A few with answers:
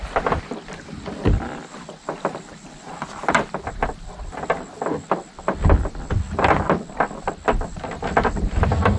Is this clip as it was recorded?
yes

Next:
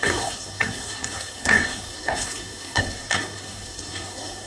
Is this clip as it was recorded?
no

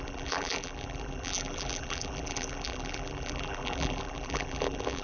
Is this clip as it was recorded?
no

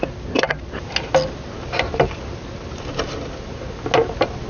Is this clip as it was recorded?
yes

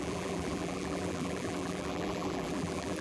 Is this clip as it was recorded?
no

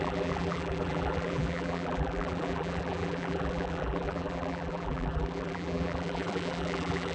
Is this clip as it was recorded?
no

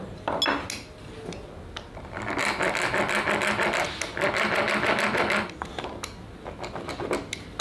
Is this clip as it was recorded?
yes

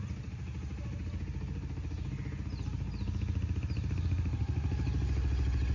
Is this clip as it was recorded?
yes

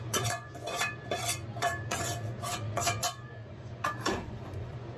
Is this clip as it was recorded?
no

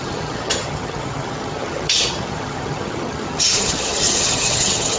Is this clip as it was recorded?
no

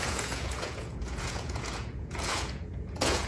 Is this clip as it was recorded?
no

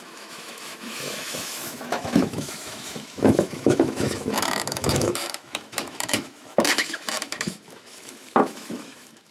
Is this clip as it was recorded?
no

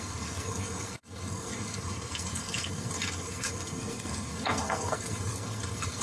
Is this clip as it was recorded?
no